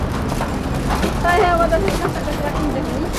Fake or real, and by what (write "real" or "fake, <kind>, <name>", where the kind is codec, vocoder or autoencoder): real